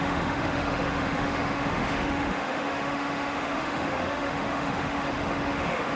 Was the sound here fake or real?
fake